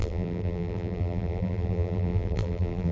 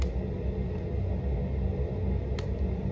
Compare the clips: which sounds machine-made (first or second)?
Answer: first